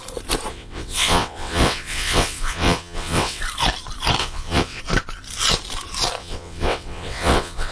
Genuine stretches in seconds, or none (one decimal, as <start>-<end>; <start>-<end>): 0.0-0.5; 3.4-4.2; 4.8-6.2